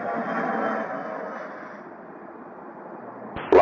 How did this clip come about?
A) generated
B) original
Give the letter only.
B